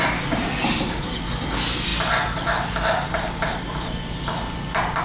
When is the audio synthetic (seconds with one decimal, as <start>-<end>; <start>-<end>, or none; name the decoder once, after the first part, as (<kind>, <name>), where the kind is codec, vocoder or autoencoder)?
none